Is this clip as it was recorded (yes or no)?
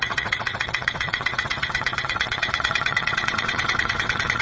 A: no